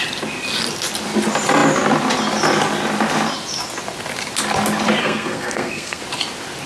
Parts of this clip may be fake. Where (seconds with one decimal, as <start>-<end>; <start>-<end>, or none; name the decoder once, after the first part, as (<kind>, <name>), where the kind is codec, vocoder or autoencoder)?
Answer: 5.0-6.0 (codec, SNAC)